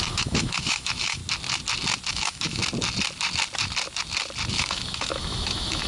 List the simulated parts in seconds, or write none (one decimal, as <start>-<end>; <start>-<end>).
0.0-1.2; 2.1-2.6; 4.5-5.9